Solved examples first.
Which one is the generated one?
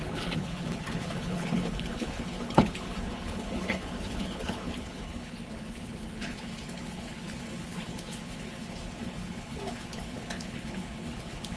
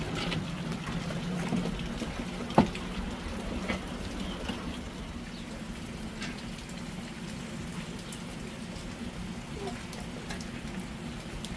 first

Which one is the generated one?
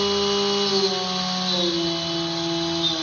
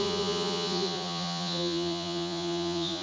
second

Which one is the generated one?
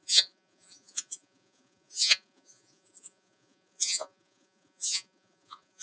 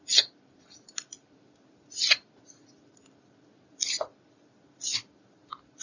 first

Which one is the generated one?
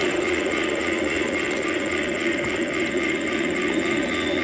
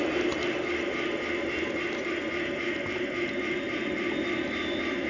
first